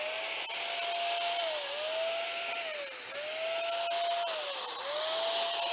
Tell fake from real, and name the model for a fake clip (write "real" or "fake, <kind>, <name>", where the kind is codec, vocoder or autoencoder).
real